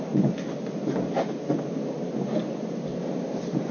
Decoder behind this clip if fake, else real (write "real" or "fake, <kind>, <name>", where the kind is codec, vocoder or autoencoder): real